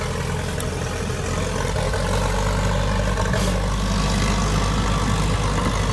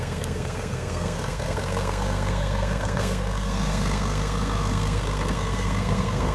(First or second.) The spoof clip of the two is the second